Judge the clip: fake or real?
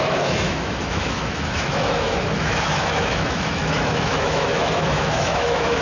fake